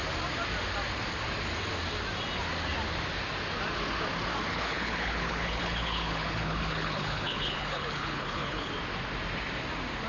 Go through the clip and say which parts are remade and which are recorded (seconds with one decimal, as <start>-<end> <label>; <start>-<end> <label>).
0.0-4.5 recorded; 4.5-8.7 remade; 8.7-10.1 recorded